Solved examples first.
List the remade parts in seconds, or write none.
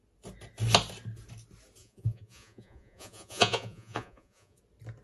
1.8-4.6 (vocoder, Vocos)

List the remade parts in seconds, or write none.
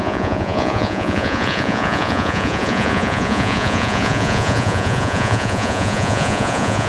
0.0-6.9 (vocoder, Vocos)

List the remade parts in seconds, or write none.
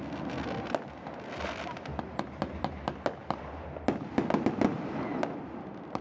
none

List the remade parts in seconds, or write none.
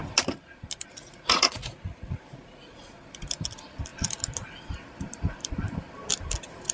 1.0-2.9 (vocoder, Vocos)